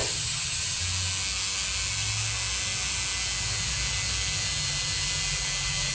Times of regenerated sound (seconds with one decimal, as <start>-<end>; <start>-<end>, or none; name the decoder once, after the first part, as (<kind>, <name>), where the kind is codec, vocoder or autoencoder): 0.0-0.8 (vocoder, HiFi-GAN)